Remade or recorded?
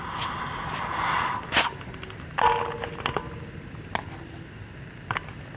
recorded